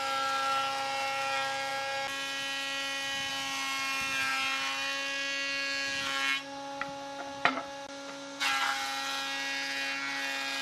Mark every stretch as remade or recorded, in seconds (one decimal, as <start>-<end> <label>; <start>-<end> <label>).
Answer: 0.0-10.6 recorded